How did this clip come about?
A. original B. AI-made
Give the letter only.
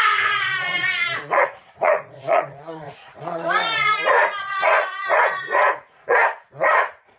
B